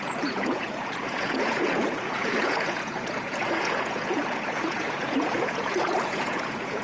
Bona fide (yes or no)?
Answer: no